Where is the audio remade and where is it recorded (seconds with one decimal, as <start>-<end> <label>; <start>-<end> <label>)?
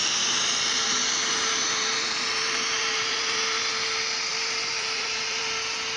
0.0-3.6 remade; 3.6-4.3 recorded; 4.3-5.4 remade; 5.4-6.0 recorded